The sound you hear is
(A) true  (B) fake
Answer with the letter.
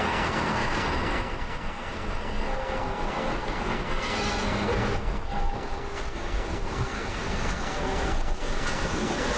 B